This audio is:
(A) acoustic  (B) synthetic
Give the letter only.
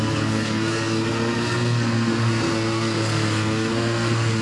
B